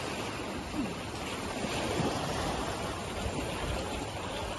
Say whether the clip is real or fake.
real